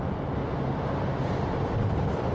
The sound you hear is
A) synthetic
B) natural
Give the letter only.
B